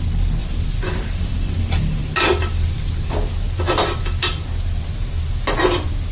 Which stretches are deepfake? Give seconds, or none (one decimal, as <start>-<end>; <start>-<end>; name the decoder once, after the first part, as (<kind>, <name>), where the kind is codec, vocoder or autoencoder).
0.4-1.6 (vocoder, BigVGAN v2)